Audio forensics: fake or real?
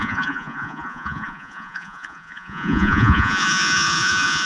fake